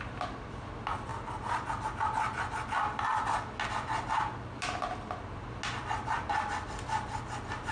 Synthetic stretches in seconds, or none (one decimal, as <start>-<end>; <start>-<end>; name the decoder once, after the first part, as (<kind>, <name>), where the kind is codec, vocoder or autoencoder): none